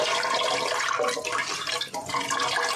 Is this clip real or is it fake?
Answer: real